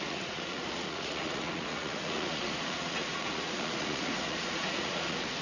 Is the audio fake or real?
fake